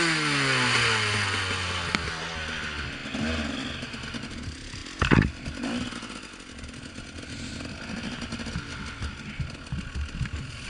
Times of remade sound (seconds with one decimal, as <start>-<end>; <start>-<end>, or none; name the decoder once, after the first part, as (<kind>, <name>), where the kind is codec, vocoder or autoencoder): none